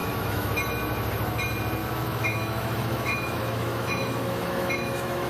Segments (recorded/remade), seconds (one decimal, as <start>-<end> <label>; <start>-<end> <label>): 0.0-0.5 remade; 0.5-1.8 recorded; 1.8-5.3 remade

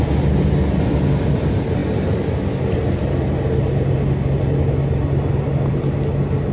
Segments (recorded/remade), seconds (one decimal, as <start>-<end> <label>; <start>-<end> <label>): 0.0-6.5 recorded

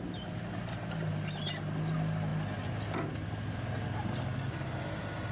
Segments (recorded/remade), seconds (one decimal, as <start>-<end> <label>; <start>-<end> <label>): 0.0-5.3 recorded

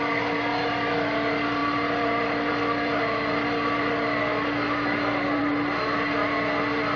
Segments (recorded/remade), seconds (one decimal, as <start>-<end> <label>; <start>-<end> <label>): 0.0-7.0 recorded

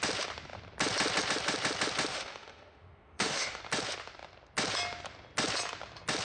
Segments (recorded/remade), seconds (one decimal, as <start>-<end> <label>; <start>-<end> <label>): 0.0-2.1 recorded; 2.1-3.6 remade; 3.6-6.2 recorded

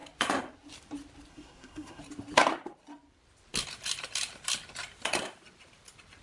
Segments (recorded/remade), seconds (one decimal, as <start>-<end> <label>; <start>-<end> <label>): 0.0-1.3 recorded; 1.3-2.0 remade; 2.0-6.2 recorded